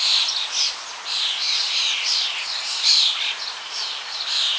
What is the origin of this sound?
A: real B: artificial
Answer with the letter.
A